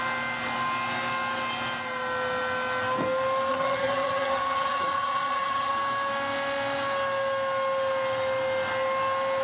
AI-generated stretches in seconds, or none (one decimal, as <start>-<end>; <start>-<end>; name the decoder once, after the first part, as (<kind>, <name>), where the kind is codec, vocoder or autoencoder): 3.5-5.7 (vocoder, HiFi-GAN)